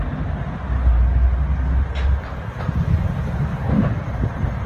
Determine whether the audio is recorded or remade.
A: recorded